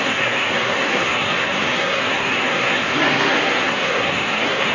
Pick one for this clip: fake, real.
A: fake